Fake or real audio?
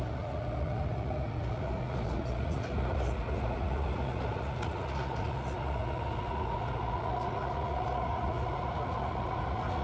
fake